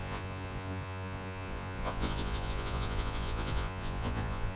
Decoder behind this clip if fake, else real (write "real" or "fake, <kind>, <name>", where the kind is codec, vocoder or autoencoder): fake, vocoder, Vocos